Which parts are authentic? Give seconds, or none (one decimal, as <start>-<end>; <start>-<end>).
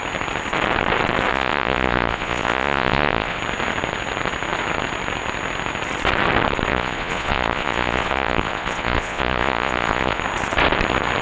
0.0-1.3; 3.4-6.7; 10.2-11.2